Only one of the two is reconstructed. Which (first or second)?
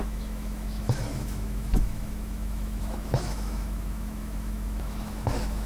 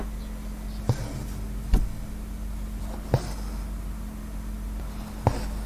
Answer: first